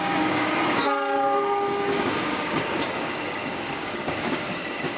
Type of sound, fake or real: fake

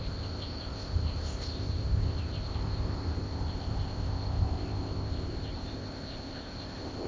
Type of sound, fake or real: fake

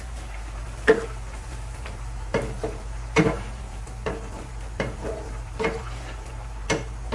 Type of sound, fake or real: fake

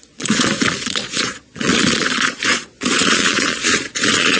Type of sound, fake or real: fake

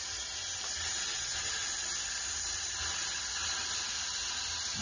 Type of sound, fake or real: real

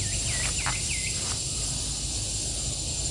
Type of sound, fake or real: real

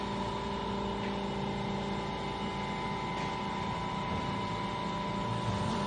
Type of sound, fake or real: real